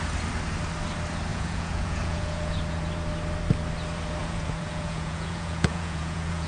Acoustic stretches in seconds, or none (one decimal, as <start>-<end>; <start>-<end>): 0.0-1.3; 2.8-4.2